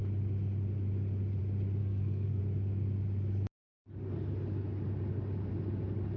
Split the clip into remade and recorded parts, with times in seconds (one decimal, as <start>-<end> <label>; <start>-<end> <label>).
0.0-1.8 recorded; 1.8-2.4 remade; 2.4-6.2 recorded